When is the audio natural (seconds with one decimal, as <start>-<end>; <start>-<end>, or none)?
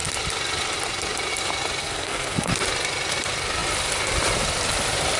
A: 0.0-1.8; 2.5-5.2